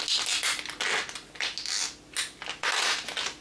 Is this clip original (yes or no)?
yes